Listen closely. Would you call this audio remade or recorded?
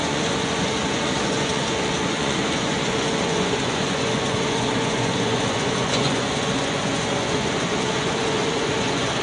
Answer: remade